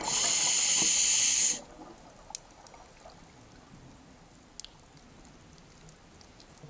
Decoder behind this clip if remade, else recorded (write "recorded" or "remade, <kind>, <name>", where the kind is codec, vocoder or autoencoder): recorded